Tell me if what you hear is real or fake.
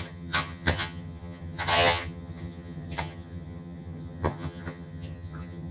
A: fake